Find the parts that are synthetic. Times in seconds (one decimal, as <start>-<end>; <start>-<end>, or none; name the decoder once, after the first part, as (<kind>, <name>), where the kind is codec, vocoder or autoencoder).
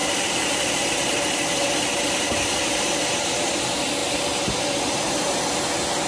0.0-3.6 (vocoder, BigVGAN v2); 4.0-5.5